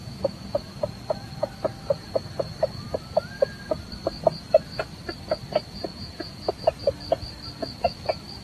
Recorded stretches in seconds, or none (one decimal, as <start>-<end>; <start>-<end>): 1.5-5.9; 6.5-8.4